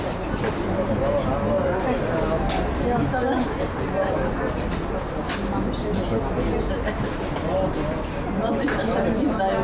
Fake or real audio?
real